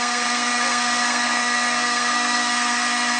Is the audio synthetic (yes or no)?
yes